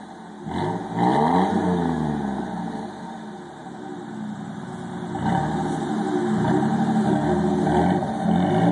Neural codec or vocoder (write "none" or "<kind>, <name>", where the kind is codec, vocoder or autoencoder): none